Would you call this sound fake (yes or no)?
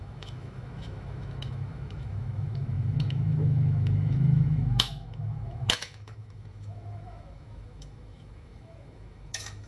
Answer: yes